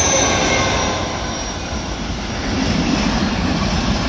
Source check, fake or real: real